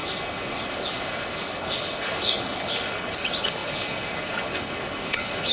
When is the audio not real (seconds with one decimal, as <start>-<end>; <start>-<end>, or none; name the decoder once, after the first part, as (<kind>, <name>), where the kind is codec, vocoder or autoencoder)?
0.0-5.5 (codec, HILCodec)